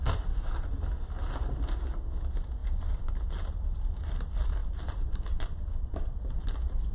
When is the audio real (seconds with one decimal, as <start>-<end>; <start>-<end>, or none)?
0.0-4.6; 6.2-6.9